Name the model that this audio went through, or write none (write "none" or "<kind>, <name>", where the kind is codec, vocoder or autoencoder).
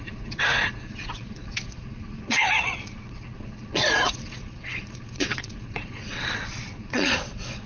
vocoder, Vocos